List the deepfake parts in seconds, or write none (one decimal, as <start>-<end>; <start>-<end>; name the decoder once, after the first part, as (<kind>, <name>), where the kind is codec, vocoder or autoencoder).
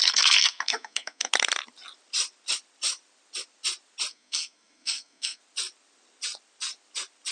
0.0-1.3 (codec, SNAC); 4.1-5.4